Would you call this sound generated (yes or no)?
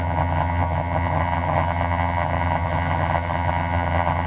yes